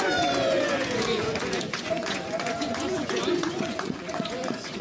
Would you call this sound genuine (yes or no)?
no